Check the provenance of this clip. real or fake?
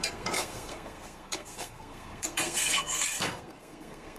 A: fake